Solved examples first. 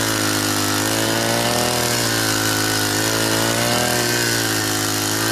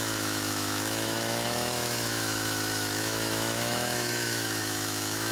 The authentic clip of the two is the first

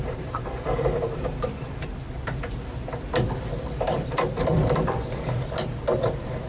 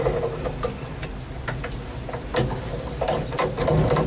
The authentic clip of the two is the second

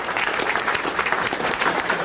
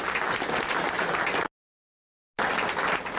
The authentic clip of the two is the second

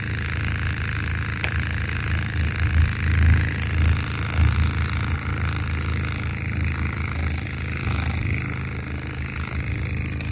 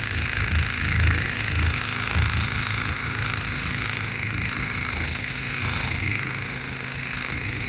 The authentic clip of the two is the first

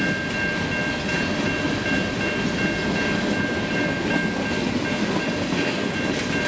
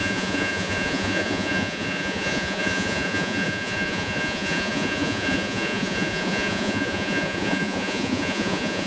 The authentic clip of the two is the first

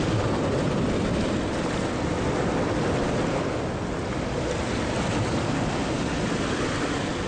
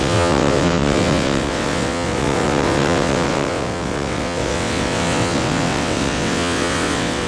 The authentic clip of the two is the first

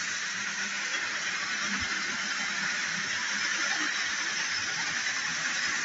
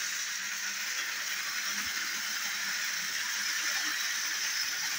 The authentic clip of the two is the second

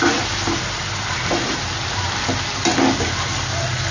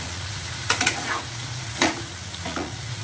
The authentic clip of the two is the first